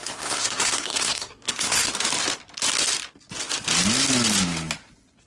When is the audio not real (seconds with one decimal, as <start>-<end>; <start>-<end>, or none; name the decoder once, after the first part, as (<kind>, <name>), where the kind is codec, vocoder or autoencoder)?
0.0-1.9 (codec, SNAC)